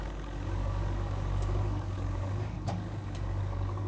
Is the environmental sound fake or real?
fake